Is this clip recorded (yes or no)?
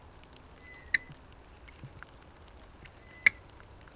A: yes